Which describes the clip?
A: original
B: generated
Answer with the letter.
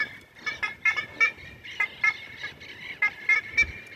A